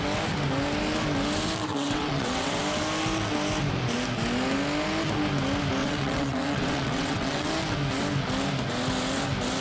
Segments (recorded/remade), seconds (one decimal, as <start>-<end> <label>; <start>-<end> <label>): 0.0-1.7 recorded; 1.7-2.6 remade; 2.6-5.8 recorded; 5.8-7.5 remade; 7.5-9.6 recorded